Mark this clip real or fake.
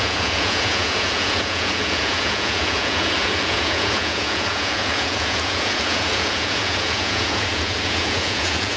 fake